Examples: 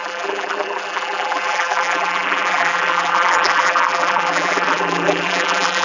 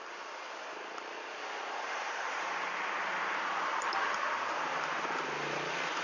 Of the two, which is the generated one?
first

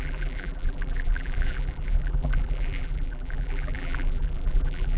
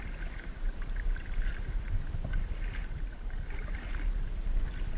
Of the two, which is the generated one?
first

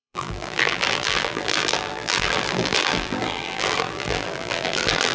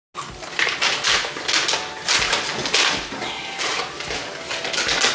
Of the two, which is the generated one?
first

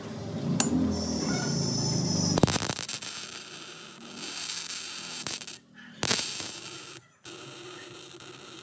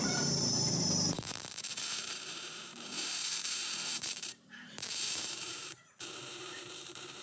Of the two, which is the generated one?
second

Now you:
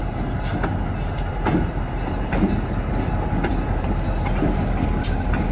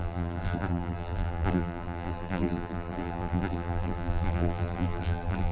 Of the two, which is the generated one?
second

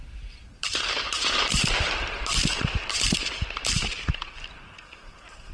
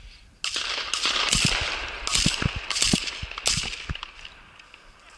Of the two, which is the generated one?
first